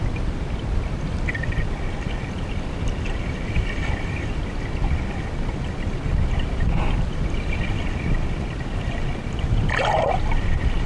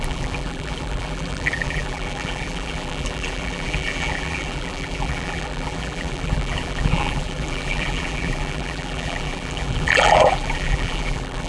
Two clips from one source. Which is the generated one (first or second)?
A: second